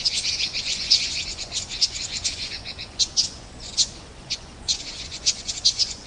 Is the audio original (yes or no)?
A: no